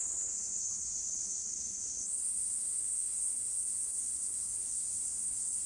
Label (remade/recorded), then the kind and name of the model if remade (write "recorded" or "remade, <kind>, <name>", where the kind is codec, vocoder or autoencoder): remade, codec, HILCodec